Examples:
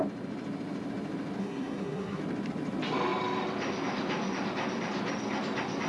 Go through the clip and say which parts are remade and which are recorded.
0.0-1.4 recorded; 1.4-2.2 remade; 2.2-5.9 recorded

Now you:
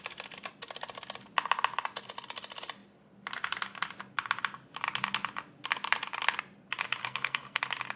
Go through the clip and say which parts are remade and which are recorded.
0.0-7.0 recorded; 7.0-7.6 remade; 7.6-8.0 recorded

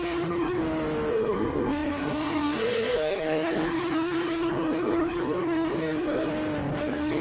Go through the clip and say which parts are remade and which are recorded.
0.0-0.6 remade; 0.6-1.1 recorded; 1.1-6.3 remade; 6.3-6.8 recorded; 6.8-7.2 remade